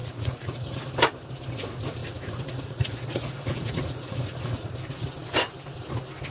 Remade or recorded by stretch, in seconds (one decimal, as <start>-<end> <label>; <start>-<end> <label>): 0.0-0.8 remade; 0.8-2.0 recorded; 2.0-4.7 remade; 4.7-6.3 recorded